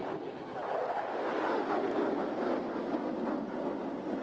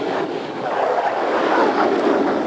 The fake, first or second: second